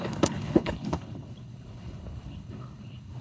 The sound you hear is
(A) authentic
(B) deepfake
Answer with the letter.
B